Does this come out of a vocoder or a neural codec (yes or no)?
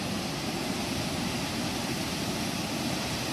yes